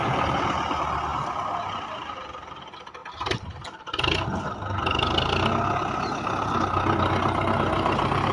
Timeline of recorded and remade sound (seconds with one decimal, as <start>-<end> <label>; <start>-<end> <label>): 0.0-8.3 recorded